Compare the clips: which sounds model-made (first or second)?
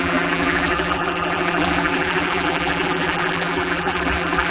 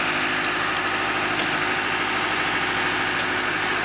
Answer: first